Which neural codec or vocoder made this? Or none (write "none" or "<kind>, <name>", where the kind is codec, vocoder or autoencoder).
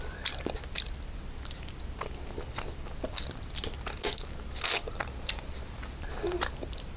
none